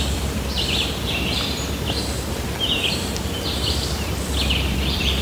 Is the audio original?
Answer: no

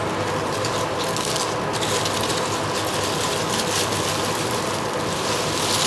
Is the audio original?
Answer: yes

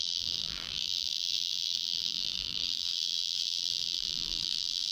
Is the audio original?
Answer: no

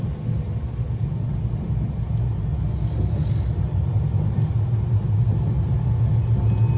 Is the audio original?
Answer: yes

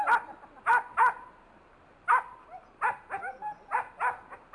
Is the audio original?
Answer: no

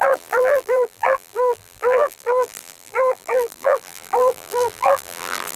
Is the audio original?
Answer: no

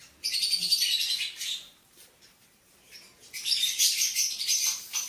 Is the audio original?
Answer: no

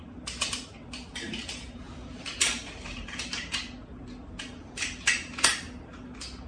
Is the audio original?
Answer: yes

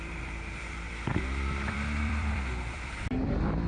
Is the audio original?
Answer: no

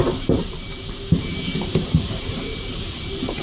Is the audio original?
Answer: no